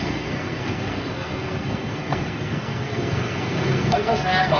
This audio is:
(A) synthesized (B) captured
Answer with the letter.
A